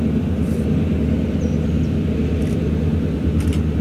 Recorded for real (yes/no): yes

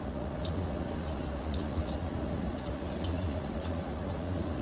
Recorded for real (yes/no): no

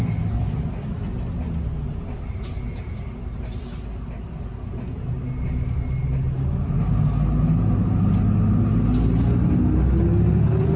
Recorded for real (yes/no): yes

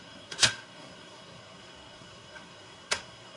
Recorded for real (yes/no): no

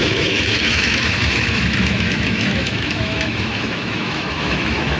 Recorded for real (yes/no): no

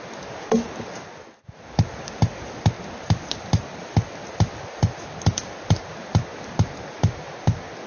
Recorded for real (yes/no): yes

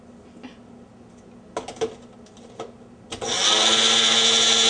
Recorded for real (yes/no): yes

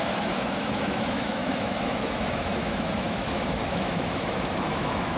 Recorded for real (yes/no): no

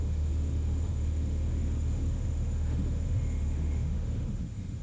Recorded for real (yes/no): no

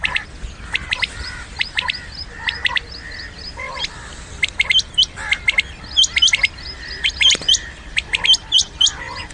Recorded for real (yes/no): no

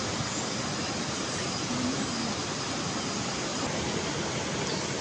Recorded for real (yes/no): yes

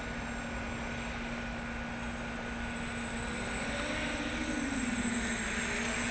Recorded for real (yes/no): yes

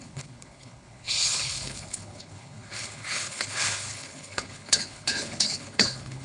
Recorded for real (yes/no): no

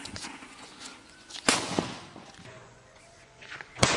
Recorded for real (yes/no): no